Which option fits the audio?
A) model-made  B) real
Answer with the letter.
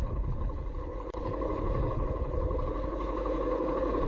A